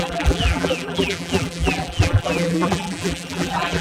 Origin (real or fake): fake